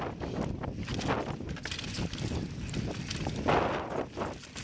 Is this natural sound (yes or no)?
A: yes